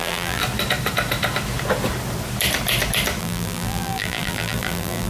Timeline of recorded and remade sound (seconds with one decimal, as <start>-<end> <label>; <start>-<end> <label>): 0.0-0.4 remade; 0.4-3.2 recorded; 3.2-5.1 remade